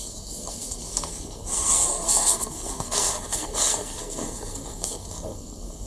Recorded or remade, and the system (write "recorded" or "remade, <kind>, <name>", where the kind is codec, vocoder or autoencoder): remade, codec, SNAC